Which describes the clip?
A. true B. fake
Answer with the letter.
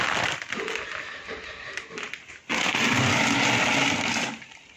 A